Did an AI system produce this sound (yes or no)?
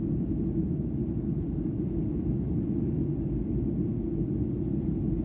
no